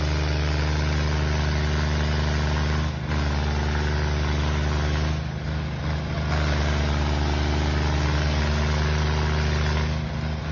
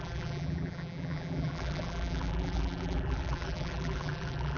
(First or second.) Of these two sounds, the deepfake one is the second